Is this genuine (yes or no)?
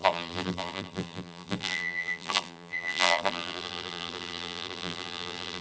no